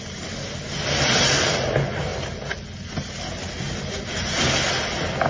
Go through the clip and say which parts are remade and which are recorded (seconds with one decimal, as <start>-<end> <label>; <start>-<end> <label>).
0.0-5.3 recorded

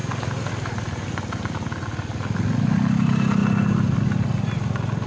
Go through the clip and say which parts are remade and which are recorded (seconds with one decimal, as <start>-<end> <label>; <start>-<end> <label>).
0.0-5.1 recorded

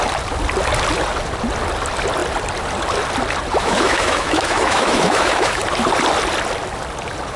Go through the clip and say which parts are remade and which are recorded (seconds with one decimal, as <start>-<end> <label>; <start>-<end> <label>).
0.0-3.6 recorded; 3.6-5.6 remade; 5.6-7.4 recorded

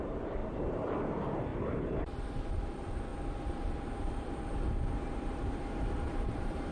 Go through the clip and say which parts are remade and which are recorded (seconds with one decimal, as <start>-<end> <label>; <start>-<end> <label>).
0.0-1.5 remade; 1.5-2.5 recorded; 2.5-3.1 remade; 3.1-5.8 recorded; 5.8-6.7 remade